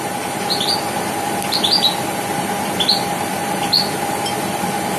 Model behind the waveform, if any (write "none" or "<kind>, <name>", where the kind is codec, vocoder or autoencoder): none